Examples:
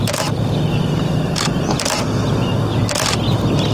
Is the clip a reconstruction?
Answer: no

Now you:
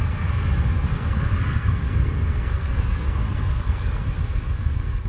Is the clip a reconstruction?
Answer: yes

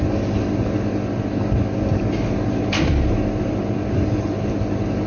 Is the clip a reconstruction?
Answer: no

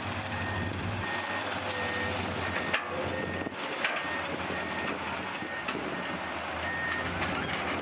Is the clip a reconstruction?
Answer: no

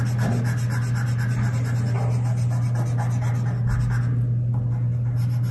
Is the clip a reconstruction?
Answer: no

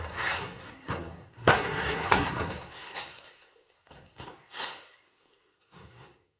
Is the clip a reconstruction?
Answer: yes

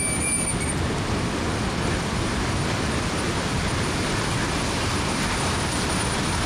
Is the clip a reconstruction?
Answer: no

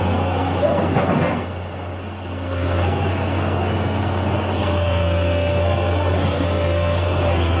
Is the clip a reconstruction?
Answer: yes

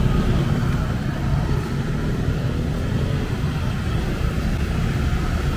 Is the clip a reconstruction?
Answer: no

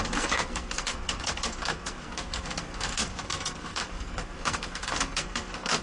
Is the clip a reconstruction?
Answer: yes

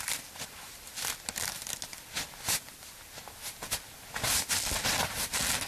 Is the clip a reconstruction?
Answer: no